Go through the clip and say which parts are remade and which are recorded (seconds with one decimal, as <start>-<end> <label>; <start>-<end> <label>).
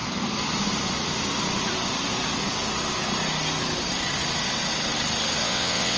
0.0-5.4 recorded; 5.4-6.0 remade